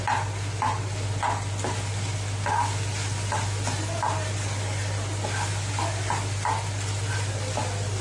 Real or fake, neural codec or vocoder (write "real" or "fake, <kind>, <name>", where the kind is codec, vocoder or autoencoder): real